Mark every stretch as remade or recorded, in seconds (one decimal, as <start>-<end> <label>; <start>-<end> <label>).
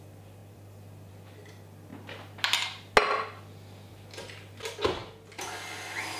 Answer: 0.0-0.4 recorded; 0.4-1.1 remade; 1.1-6.2 recorded